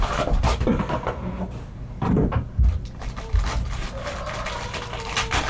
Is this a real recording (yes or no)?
no